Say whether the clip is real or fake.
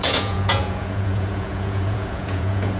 fake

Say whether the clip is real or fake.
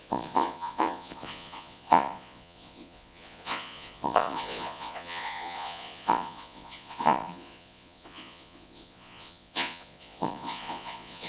fake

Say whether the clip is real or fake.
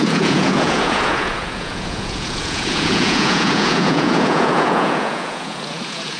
fake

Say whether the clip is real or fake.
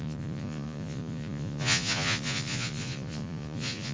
fake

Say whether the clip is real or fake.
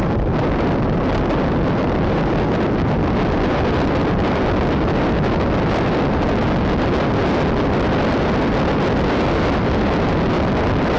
real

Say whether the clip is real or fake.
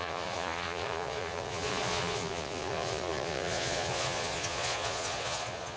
fake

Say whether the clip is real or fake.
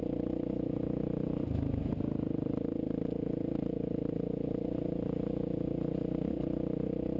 real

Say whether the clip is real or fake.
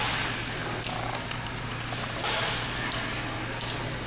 real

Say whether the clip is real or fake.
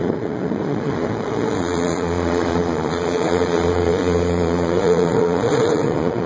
fake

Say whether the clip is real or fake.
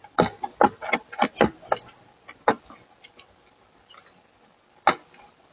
real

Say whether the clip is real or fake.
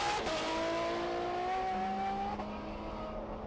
real